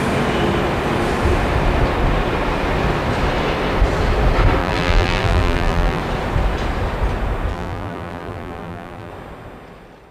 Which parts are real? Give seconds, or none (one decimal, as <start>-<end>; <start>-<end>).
0.0-4.6; 6.0-7.5; 9.1-10.1